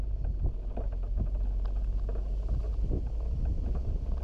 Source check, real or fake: real